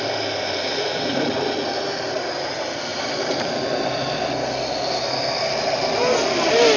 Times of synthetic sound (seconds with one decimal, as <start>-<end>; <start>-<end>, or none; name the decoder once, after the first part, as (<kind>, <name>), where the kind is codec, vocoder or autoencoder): 2.9-4.6 (vocoder, BigVGAN v2)